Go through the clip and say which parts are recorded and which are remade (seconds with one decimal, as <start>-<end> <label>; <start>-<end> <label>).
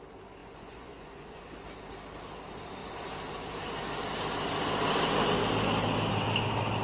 0.0-0.4 recorded; 0.4-1.4 remade; 1.4-6.8 recorded